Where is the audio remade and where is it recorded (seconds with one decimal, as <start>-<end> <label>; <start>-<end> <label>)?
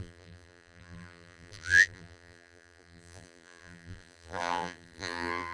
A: 0.0-5.5 remade